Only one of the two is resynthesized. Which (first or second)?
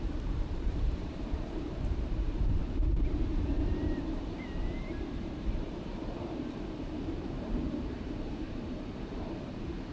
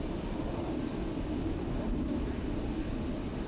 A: first